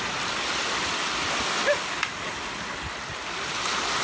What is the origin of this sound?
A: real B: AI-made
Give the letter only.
A